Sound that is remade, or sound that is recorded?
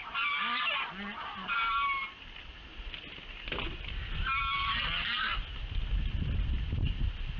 recorded